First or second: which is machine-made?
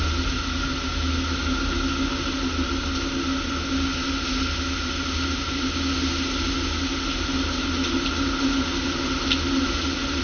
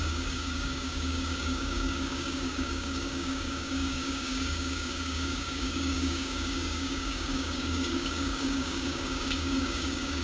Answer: second